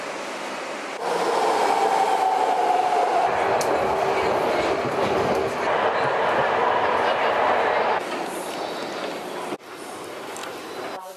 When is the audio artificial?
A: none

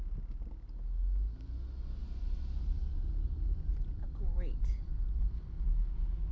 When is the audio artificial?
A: 2.0-5.3

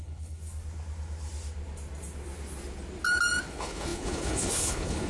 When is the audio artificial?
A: 0.0-0.4; 3.5-5.1

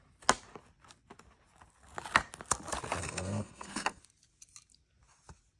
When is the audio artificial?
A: 3.0-4.0

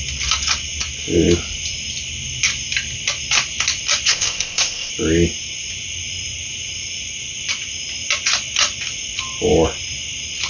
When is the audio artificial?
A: 4.1-4.9